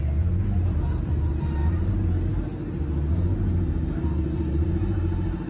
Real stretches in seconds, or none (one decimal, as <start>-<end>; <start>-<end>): 0.0-5.5